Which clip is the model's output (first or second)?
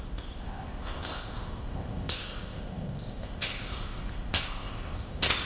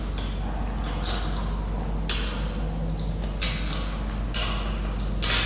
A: first